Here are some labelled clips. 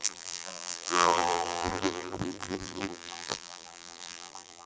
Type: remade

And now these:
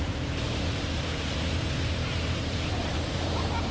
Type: remade